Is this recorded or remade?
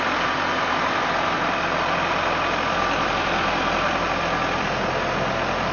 recorded